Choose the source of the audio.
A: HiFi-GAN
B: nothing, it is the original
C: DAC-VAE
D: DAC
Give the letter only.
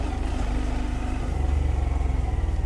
B